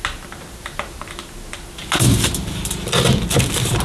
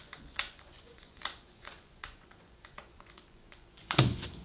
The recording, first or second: first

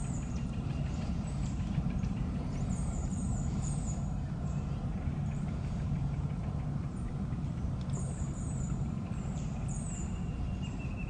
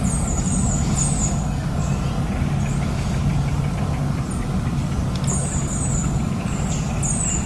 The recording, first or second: second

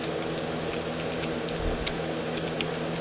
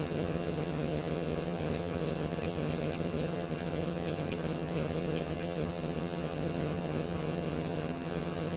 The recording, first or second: first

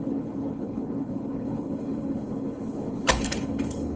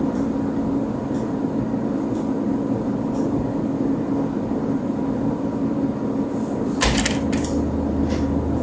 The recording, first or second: second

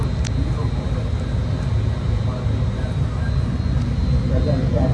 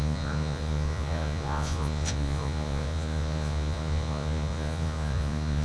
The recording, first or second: first